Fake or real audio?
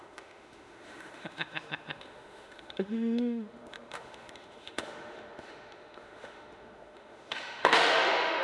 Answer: fake